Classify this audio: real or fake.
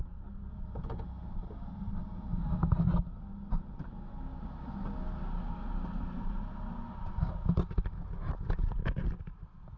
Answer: real